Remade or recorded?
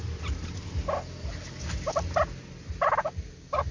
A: recorded